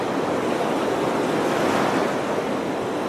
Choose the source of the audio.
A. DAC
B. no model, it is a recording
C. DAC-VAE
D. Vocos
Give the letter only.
B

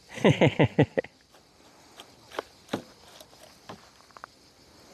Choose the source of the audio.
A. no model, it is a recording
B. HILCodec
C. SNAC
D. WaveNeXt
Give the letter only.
A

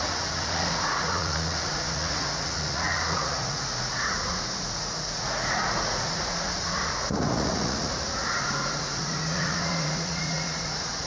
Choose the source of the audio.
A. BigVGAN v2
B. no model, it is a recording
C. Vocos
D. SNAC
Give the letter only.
C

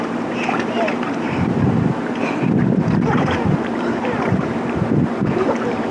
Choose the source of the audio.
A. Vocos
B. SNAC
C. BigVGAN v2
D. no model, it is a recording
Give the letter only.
C